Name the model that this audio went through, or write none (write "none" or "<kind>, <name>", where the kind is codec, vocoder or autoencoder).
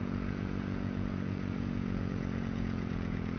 vocoder, Vocos